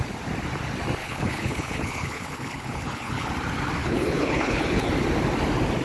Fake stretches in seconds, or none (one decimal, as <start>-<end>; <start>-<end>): 1.0-3.3; 3.8-4.9